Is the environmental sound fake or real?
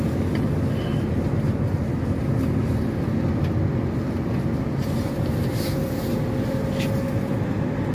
real